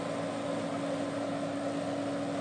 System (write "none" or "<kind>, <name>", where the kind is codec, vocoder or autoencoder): none